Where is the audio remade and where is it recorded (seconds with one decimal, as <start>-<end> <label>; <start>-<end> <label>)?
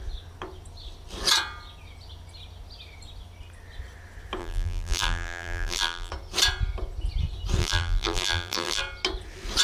0.0-4.4 recorded; 4.4-6.1 remade; 6.1-7.6 recorded; 7.6-8.8 remade; 8.8-9.6 recorded